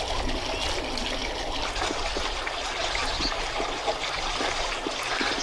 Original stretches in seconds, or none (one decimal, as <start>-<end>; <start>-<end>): 0.0-3.0; 3.6-5.4